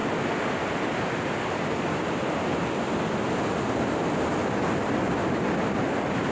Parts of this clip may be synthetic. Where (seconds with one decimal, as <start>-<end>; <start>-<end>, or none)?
none